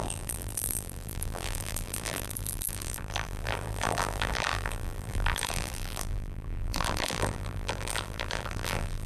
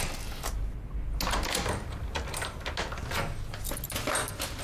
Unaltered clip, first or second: second